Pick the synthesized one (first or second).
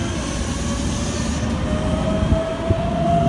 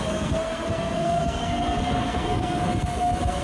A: second